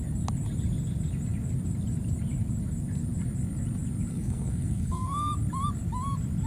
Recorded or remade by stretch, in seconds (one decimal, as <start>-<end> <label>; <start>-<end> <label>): 0.0-4.1 recorded; 4.1-5.3 remade; 5.3-6.5 recorded